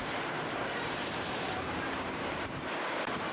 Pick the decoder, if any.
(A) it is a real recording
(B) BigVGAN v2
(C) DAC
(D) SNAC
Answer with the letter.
B